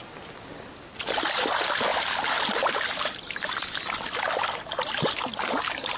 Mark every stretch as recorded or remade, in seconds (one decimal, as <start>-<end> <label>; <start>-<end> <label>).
0.0-6.0 recorded